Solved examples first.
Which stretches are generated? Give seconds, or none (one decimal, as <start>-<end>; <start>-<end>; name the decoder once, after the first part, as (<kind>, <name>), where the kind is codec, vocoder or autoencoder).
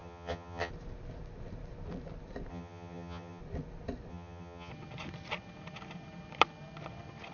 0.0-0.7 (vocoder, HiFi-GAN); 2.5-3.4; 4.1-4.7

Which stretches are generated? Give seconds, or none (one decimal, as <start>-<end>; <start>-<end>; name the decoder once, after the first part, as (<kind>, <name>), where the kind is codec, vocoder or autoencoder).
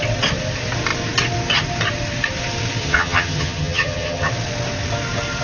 2.8-4.3 (vocoder, HiFi-GAN)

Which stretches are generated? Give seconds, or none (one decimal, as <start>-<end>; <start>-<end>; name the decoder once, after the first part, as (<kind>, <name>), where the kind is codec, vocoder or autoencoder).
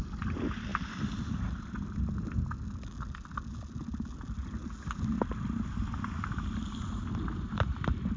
none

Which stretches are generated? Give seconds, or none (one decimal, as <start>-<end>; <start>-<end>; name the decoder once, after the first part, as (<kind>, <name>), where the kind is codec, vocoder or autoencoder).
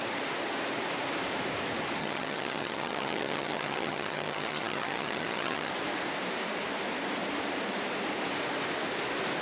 2.0-5.7 (vocoder, HiFi-GAN)